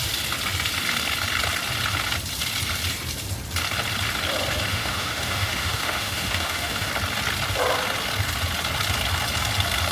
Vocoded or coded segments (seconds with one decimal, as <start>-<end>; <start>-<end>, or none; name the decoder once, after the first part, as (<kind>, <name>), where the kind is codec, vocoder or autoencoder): 4.7-6.9 (autoencoder, DAC-VAE)